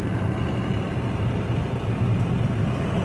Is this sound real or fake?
real